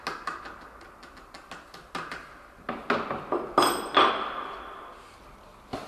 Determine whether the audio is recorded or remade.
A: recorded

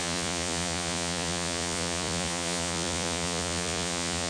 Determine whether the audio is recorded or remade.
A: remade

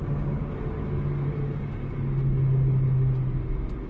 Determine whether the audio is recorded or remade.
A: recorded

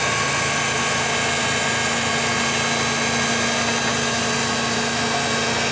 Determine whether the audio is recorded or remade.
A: recorded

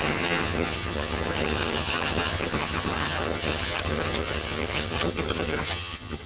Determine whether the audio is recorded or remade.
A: remade